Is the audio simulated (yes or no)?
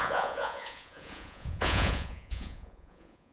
yes